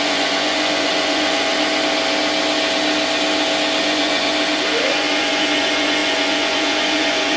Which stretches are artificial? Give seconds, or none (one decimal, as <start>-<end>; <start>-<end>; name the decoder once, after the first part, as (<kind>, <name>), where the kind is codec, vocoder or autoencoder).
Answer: 0.0-1.5 (vocoder, Vocos); 3.8-4.3; 4.9-7.4